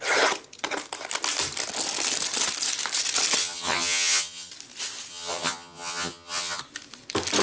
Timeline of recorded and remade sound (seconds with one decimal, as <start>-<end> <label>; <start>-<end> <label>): 0.0-3.4 recorded; 3.4-4.5 remade; 4.5-5.1 recorded; 5.1-6.6 remade; 6.6-7.4 recorded